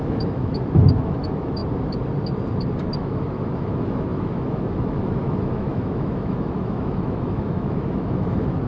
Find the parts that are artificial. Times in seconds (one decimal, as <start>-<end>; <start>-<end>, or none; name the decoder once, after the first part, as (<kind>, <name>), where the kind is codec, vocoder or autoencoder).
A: 0.0-1.6 (autoencoder, DAC-VAE); 2.8-8.7